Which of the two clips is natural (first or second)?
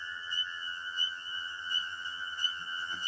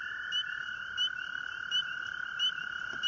second